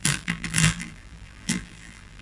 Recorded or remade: remade